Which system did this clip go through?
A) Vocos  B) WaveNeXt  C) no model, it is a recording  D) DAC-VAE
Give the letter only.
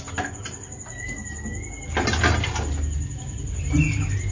C